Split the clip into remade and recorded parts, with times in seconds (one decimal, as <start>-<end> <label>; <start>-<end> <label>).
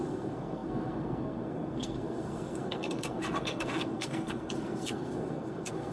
0.0-5.9 remade